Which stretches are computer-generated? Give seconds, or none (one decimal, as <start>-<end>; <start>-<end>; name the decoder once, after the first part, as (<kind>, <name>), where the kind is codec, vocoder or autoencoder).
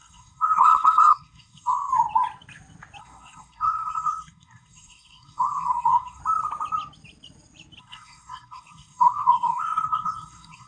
0.0-1.9 (codec, SNAC); 3.0-6.2; 7.8-10.7